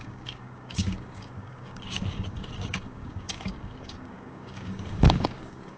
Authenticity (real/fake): fake